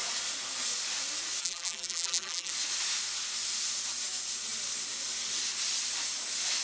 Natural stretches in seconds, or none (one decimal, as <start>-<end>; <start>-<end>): 0.0-1.4; 2.5-6.6